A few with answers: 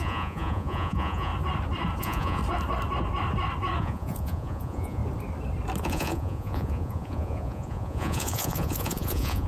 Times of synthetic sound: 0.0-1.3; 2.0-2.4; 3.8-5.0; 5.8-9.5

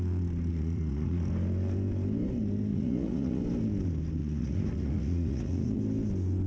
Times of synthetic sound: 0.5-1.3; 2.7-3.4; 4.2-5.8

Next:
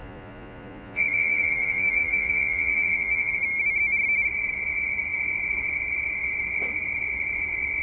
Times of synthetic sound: 0.0-3.4